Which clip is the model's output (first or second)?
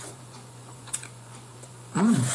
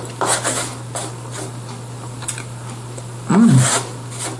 first